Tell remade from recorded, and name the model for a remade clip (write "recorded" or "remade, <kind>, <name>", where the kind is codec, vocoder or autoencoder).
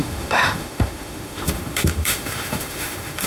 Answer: remade, autoencoder, DAC-VAE